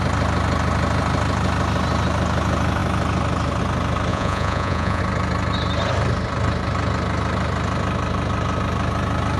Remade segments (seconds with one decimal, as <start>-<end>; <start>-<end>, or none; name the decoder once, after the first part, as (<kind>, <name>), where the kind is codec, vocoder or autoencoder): 4.1-5.0 (vocoder, Vocos)